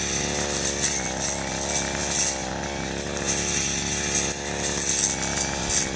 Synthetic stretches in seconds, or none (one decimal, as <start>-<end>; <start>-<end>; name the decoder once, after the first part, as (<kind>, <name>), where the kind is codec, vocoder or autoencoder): none